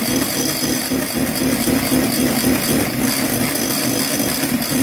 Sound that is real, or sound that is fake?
real